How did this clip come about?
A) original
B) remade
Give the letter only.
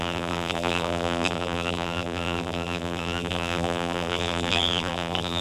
B